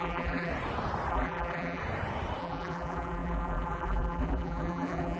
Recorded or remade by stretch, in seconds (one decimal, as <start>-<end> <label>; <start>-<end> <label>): 0.0-0.5 remade; 0.5-1.1 recorded; 1.1-1.8 remade; 1.8-2.4 recorded; 2.4-5.2 remade